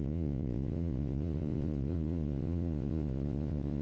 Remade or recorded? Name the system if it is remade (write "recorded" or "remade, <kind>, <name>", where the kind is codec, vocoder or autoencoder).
remade, vocoder, Vocos